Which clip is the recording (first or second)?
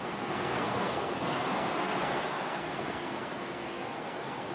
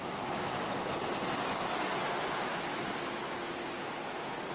second